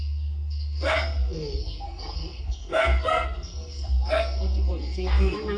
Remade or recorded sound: remade